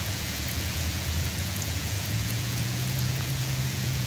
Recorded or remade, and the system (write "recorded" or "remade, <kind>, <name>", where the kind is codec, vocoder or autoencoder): remade, vocoder, Vocos